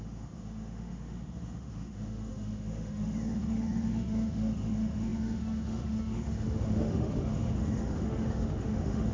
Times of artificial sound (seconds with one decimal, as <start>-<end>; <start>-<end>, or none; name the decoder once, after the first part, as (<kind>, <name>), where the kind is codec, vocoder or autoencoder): 0.0-9.1 (autoencoder, DAC-VAE)